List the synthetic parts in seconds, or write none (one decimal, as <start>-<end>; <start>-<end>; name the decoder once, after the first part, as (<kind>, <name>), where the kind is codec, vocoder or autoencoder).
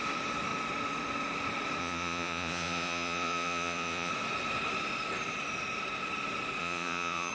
1.8-4.1 (vocoder, Vocos); 6.6-7.3